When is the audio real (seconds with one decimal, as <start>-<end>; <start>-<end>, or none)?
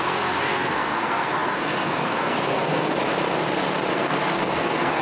3.0-3.9